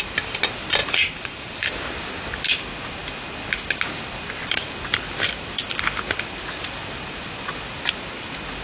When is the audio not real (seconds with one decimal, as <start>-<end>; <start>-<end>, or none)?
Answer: 0.8-1.8

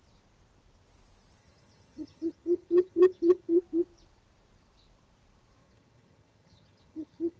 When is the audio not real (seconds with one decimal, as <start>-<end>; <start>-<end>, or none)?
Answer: 1.4-3.6; 5.6-7.4

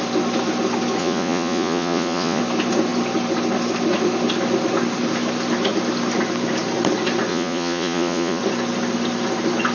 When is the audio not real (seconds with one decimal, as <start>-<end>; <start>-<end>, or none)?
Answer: 1.0-2.4; 7.3-8.4

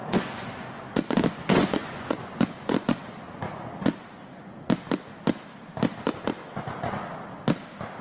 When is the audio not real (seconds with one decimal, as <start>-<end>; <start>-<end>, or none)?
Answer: 0.0-4.8; 6.4-7.0

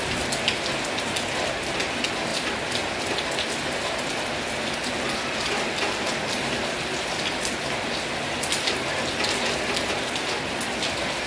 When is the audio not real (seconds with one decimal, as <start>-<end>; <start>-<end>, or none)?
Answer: none

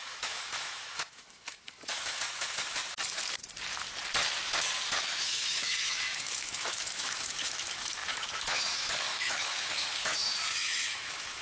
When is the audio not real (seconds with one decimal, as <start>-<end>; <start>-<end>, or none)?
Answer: 0.0-2.8; 5.0-11.4